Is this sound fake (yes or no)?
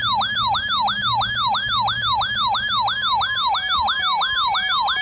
no